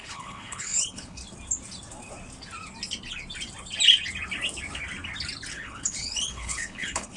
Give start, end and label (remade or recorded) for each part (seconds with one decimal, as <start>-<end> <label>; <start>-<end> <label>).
0.0-1.2 remade; 1.2-5.5 recorded; 5.5-7.2 remade

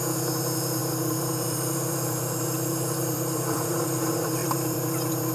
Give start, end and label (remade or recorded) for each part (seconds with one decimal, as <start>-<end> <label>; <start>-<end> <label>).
0.0-0.8 recorded; 0.8-4.0 remade; 4.0-4.4 recorded; 4.4-5.3 remade

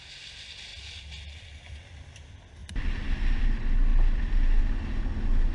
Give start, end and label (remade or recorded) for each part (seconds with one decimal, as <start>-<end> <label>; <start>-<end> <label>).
0.0-5.5 recorded